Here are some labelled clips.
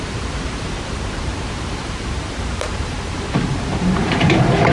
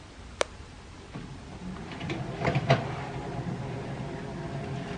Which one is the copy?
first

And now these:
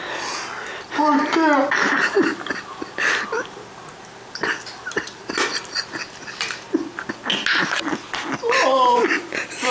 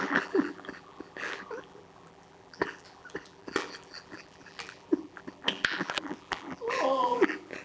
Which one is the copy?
second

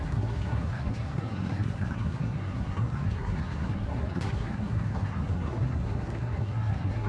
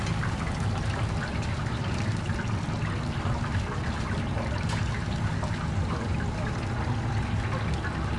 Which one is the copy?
first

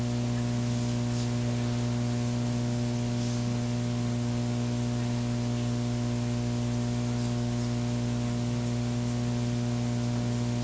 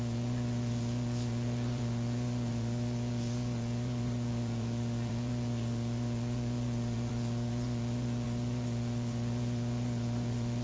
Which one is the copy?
second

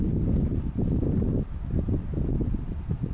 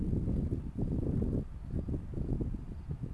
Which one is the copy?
first